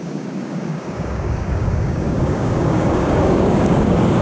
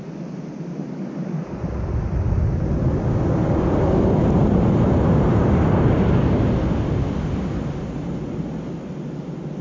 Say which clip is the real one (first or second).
second